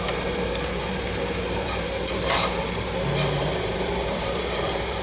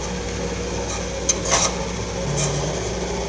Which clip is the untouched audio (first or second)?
second